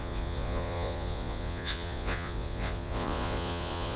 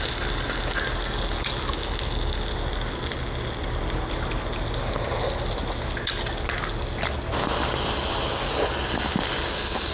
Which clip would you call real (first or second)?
second